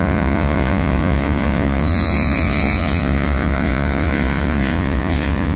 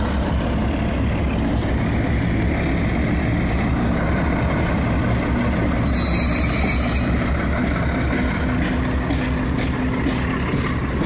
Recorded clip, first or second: second